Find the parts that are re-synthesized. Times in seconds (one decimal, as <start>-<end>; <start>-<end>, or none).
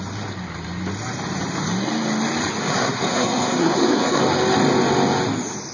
2.6-4.2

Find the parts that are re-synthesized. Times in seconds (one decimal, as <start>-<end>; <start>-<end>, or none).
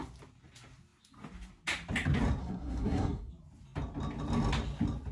2.4-3.3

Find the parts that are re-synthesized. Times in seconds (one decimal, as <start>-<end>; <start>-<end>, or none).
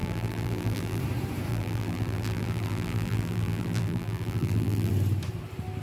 0.0-1.0; 1.5-4.9